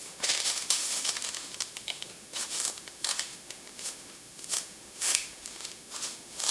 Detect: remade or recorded remade